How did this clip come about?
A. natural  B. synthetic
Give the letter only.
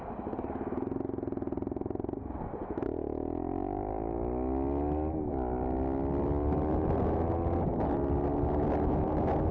A